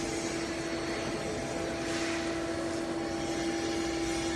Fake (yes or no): no